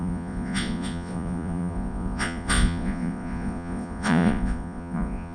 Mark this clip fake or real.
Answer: fake